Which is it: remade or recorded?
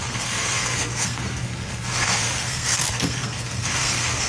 remade